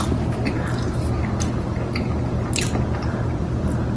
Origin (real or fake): real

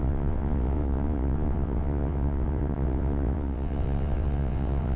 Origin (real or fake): fake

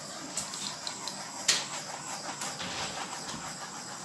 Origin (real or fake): real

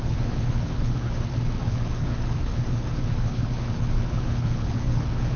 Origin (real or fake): fake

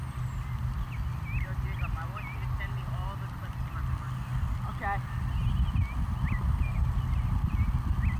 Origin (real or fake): real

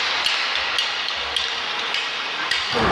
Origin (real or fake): real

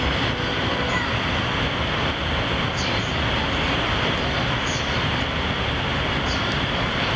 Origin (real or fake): real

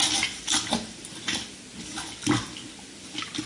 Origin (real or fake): fake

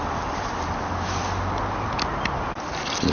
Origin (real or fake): real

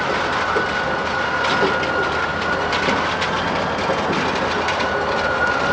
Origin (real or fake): real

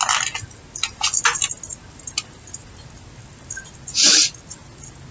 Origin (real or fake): real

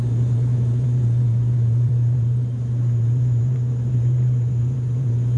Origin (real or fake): fake